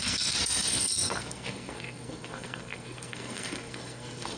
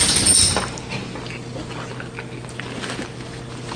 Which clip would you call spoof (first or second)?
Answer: first